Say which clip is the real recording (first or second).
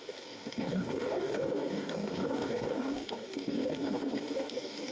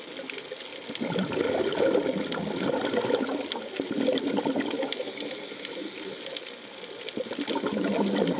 second